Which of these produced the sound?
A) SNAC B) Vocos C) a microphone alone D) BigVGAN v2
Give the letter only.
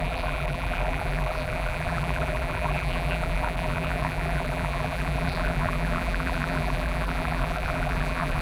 D